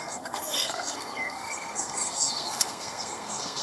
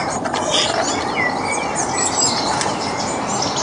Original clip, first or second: second